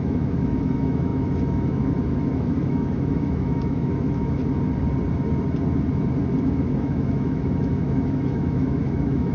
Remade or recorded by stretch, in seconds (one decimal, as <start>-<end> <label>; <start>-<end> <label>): 0.0-4.4 remade; 4.4-6.4 recorded; 6.4-9.3 remade